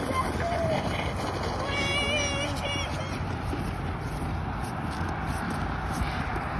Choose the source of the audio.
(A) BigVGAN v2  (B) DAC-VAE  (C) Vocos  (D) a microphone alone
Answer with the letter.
D